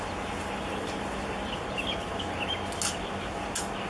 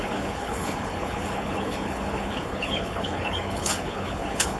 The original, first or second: first